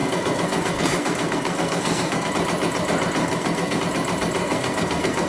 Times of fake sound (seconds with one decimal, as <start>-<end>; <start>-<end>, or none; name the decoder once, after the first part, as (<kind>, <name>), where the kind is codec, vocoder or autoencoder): 0.0-2.3 (codec, SNAC); 3.2-3.8; 4.4-5.3